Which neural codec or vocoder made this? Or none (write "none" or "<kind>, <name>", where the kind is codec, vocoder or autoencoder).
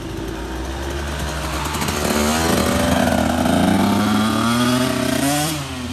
none